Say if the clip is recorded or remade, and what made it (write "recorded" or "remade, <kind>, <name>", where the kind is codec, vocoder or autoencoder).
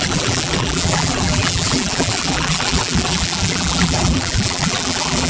remade, vocoder, BigVGAN v2